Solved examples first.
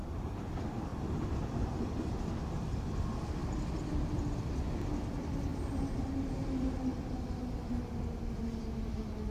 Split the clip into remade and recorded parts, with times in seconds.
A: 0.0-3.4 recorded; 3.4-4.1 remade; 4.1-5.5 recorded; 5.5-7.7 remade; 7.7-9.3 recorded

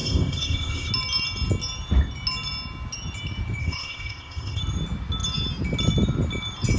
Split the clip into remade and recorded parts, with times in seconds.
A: 0.0-0.9 remade; 0.9-3.6 recorded; 3.6-4.6 remade; 4.6-6.8 recorded

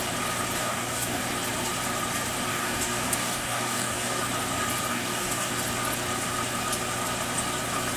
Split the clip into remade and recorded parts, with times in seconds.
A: 0.0-0.6 recorded; 0.6-1.2 remade; 1.2-2.5 recorded; 2.5-4.2 remade; 4.2-4.9 recorded; 4.9-5.5 remade; 5.5-8.0 recorded

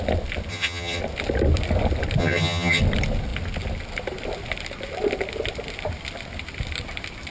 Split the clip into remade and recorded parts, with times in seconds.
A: 0.0-0.5 recorded; 0.5-1.0 remade; 1.0-2.2 recorded; 2.2-2.8 remade; 2.8-7.3 recorded

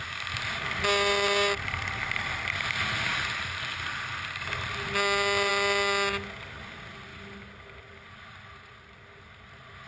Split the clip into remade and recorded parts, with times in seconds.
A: 0.0-9.9 recorded

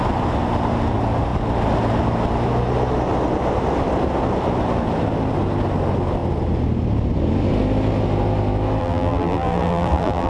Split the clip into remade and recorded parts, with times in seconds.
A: 0.0-8.8 recorded; 8.8-10.3 remade

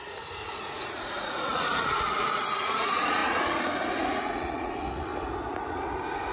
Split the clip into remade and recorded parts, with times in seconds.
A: 0.0-5.1 remade; 5.1-5.7 recorded; 5.7-6.3 remade

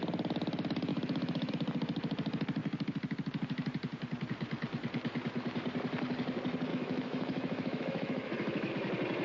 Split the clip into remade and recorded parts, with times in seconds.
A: 0.0-0.9 recorded; 0.9-1.5 remade; 1.5-6.7 recorded; 6.7-8.7 remade; 8.7-9.2 recorded